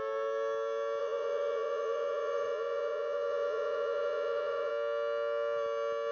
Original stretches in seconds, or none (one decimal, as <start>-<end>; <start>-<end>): 0.0-1.0; 4.7-6.1